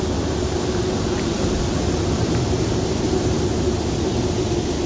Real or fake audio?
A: fake